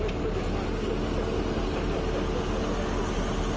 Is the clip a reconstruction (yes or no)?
no